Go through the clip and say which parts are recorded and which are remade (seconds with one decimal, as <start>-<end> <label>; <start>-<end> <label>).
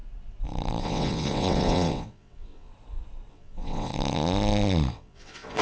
0.0-0.8 recorded; 0.8-2.7 remade; 2.7-3.3 recorded; 3.3-3.9 remade; 3.9-4.9 recorded; 4.9-5.6 remade